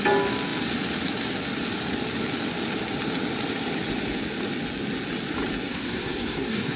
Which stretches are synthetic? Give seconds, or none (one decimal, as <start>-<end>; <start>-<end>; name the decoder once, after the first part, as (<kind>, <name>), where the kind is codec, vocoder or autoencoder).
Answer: 5.7-6.8 (codec, SNAC)